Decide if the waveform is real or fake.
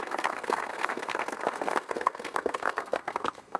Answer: fake